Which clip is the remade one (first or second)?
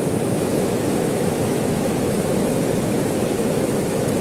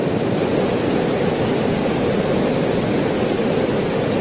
first